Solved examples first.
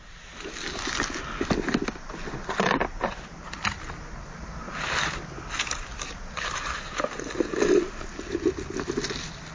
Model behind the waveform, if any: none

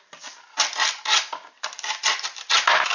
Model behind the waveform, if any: none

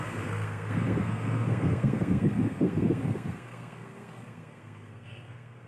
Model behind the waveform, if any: codec, SNAC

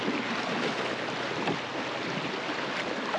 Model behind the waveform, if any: none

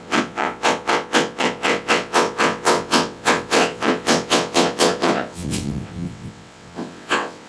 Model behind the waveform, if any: vocoder, WaveNeXt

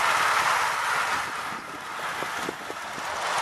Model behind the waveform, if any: none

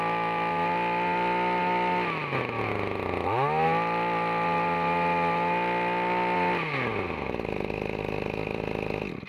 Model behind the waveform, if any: none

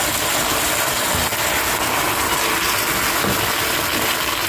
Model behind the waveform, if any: none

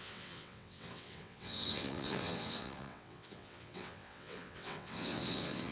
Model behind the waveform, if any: vocoder, WaveNeXt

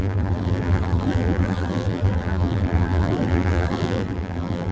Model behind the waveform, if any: vocoder, BigVGAN v2